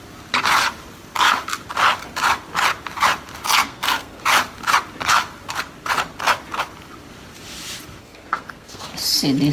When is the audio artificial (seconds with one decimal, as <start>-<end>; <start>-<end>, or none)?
3.6-4.2; 8.0-8.8